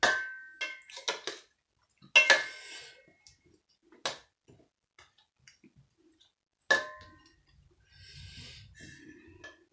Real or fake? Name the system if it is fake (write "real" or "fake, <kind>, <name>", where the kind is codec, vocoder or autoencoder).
real